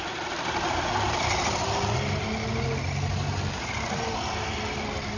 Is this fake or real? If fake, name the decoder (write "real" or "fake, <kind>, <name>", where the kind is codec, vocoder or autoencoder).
real